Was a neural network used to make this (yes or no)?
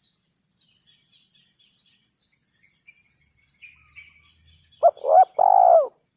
no